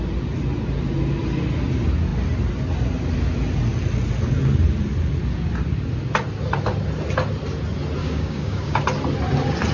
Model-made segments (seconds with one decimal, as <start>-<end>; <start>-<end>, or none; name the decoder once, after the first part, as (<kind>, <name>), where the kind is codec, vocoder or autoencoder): 8.0-8.8 (codec, DAC)